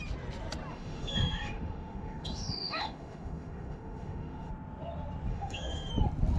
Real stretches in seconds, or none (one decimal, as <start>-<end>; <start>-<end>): 0.0-0.7; 4.5-5.3; 5.9-6.4